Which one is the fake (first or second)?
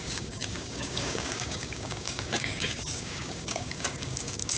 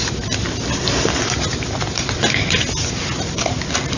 first